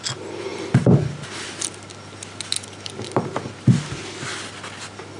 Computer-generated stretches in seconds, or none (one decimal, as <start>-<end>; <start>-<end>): none